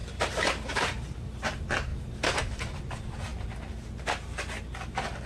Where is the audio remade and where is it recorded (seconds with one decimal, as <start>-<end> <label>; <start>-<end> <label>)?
0.0-1.5 remade; 1.5-1.9 recorded; 1.9-2.8 remade; 2.8-5.3 recorded